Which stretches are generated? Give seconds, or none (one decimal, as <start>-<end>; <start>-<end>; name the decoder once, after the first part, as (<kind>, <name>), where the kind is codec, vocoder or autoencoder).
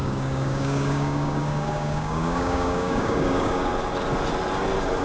0.0-3.7 (codec, DAC)